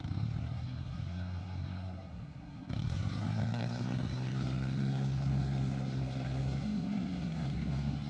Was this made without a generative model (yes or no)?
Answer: no